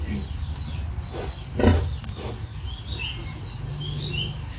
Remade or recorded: recorded